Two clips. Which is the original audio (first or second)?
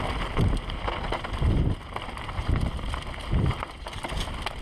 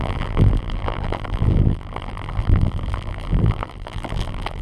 first